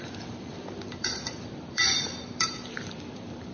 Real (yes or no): no